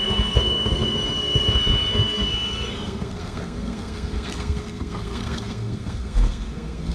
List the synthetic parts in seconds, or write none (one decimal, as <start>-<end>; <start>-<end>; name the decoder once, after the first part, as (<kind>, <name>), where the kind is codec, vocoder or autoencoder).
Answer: 0.0-6.9 (codec, SNAC)